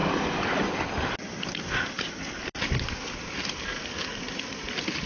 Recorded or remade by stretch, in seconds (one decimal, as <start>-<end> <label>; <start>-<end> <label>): 0.0-5.1 recorded